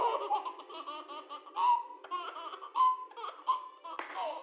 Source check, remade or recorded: recorded